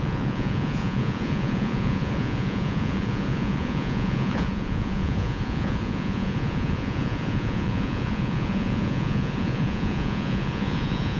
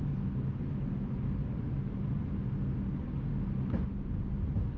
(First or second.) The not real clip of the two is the first